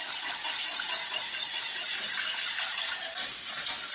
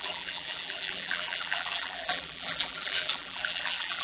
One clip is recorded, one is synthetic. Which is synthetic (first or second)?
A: second